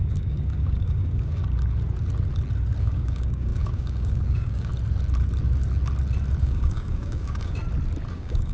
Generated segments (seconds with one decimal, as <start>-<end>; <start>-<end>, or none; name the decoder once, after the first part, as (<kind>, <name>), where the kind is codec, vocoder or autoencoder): 0.0-1.4 (codec, DAC); 2.8-4.7; 6.4-7.6; 8.1-8.5